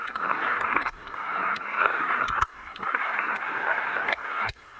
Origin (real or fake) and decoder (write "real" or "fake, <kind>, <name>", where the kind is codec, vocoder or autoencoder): fake, codec, SNAC